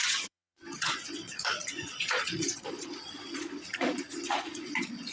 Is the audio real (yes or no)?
no